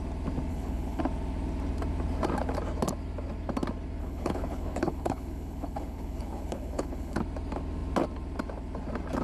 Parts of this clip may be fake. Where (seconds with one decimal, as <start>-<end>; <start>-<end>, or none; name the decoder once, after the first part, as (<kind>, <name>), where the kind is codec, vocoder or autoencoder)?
0.5-1.0 (codec, HILCodec); 4.0-7.2